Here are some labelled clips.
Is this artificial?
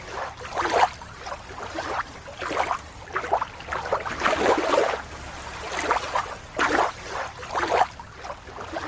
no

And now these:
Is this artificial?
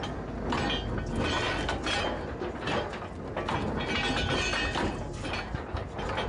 no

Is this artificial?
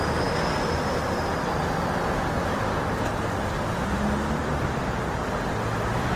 no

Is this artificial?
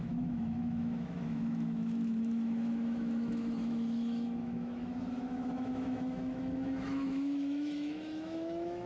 yes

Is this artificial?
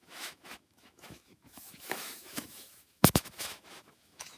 yes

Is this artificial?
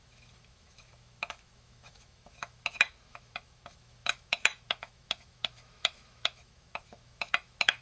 yes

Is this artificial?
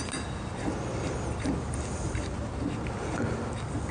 no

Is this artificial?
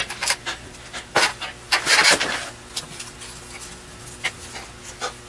no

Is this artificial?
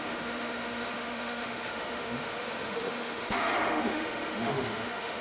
yes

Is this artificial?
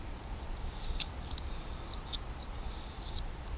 no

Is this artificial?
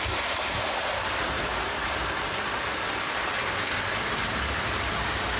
no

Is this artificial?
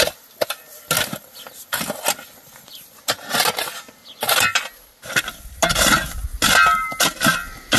no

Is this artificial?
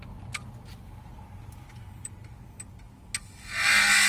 no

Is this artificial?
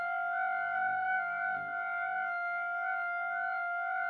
yes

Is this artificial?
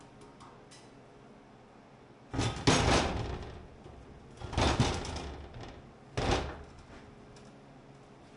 no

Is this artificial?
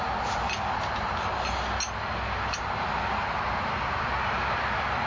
no